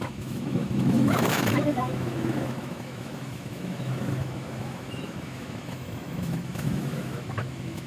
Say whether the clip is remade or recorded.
remade